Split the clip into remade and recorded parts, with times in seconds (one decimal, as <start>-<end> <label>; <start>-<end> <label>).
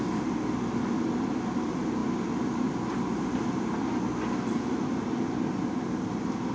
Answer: 0.0-6.5 recorded